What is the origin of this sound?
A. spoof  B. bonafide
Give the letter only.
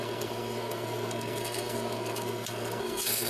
A